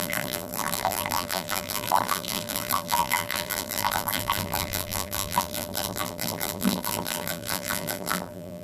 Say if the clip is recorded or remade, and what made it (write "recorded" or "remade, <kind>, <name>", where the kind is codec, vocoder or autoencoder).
remade, vocoder, BigVGAN v2